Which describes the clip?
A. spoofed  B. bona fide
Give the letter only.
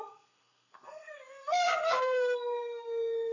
A